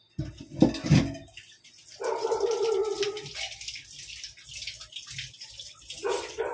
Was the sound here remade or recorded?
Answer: recorded